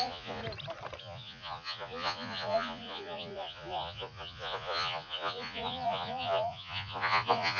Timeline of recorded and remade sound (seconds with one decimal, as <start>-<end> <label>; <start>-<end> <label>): 0.0-0.4 remade; 0.4-1.0 recorded; 1.0-7.6 remade